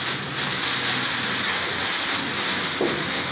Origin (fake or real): real